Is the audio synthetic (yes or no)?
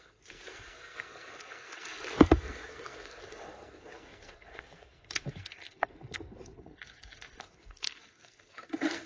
yes